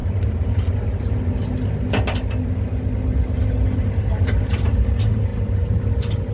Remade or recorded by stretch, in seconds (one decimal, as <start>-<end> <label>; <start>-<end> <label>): 0.0-6.3 recorded